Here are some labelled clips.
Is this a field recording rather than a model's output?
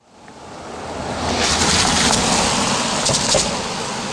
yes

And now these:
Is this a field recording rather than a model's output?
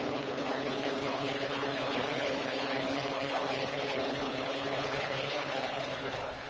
no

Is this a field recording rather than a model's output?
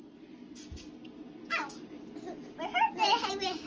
yes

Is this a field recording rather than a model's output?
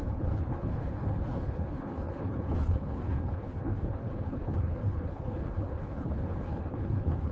no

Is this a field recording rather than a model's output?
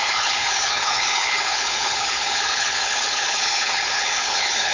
no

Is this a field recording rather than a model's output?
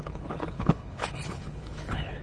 no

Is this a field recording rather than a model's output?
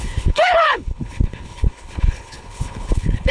no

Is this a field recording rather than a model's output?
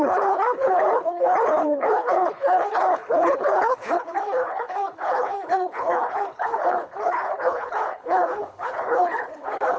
no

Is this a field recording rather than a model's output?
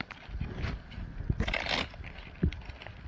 yes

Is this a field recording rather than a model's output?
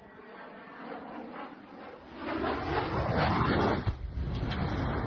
yes